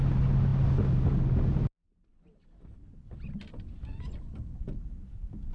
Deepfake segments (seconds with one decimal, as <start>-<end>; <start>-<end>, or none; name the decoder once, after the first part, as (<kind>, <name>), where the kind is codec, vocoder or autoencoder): none